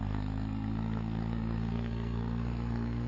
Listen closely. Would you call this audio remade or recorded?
remade